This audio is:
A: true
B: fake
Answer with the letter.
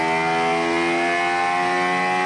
A